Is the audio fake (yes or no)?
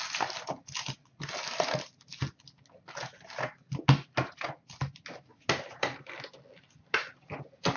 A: no